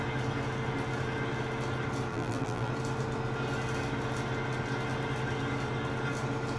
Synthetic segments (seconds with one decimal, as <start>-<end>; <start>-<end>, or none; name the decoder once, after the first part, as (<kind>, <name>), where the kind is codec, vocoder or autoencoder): 2.1-2.7 (vocoder, BigVGAN v2)